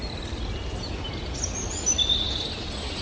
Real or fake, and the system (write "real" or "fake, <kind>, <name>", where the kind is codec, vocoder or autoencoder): real